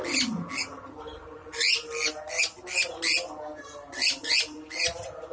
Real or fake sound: real